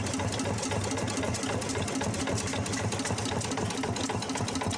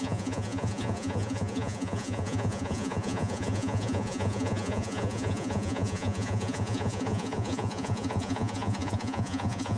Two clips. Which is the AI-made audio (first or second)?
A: second